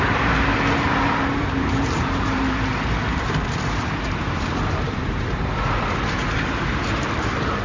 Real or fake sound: fake